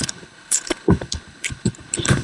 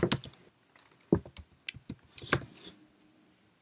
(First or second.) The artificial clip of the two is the first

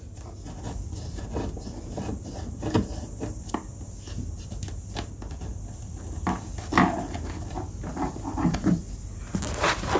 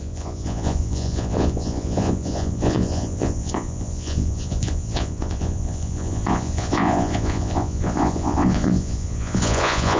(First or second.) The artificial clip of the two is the second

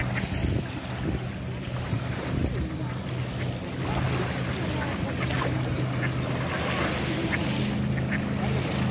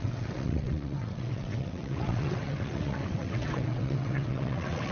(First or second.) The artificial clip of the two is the second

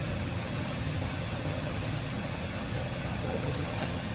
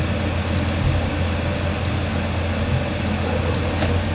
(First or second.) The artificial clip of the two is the first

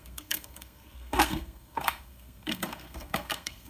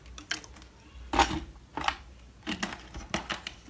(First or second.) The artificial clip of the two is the first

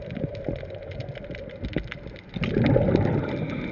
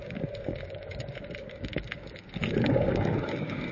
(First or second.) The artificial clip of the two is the second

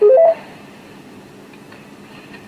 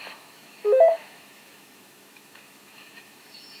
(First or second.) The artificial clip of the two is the second